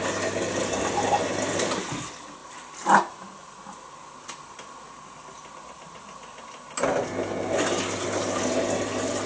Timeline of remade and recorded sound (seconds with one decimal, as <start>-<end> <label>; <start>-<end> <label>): 0.0-9.3 recorded